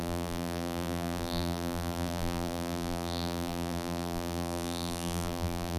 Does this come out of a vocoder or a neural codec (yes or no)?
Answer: yes